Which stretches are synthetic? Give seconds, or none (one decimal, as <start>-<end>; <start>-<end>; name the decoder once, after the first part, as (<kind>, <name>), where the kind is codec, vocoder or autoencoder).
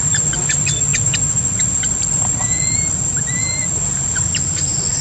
none